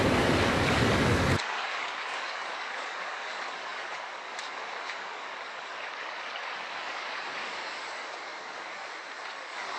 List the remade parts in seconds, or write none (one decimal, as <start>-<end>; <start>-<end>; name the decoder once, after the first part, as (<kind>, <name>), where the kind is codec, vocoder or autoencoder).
0.0-8.8 (codec, DAC); 9.3-9.8